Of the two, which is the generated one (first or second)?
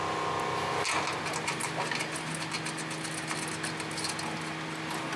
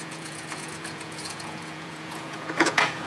second